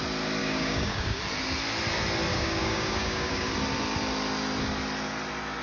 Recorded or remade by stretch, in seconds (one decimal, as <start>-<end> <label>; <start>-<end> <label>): 0.0-0.4 recorded; 0.4-1.2 remade; 1.2-2.3 recorded; 2.3-3.5 remade; 3.5-5.6 recorded